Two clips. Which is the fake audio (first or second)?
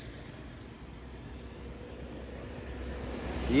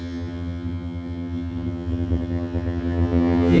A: second